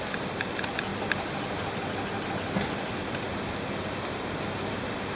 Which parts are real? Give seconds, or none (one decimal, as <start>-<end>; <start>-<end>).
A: 0.0-5.2